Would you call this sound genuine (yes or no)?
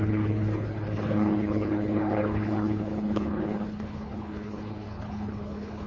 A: no